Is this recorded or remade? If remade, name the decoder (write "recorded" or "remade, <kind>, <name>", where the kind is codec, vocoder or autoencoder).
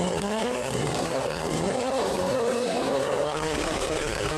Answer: remade, codec, SNAC